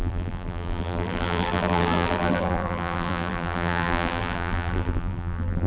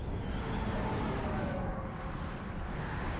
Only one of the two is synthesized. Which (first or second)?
first